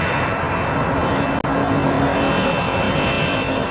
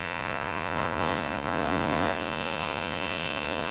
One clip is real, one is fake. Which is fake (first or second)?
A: second